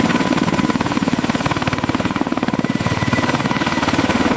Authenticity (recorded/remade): recorded